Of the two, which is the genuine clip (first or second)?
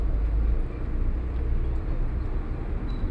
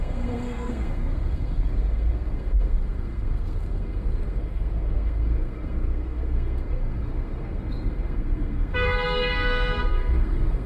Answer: first